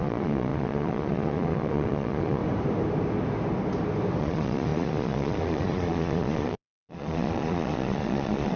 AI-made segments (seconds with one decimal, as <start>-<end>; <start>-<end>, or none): 0.0-2.4; 4.2-8.6